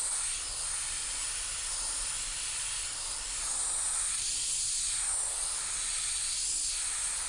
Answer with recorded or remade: recorded